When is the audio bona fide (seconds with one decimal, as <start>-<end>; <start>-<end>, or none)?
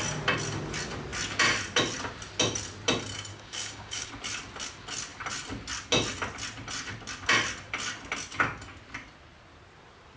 0.0-3.3; 4.1-10.2